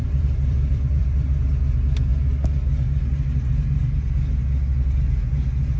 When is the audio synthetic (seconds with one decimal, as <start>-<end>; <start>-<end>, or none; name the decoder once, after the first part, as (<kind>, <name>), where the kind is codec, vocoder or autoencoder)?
0.0-1.4 (vocoder, BigVGAN v2)